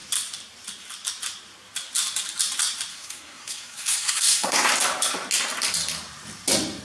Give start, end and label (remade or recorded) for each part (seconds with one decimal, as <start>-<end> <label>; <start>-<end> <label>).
0.0-2.9 recorded; 2.9-4.7 remade; 4.7-6.8 recorded